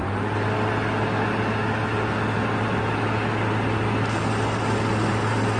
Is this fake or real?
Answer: real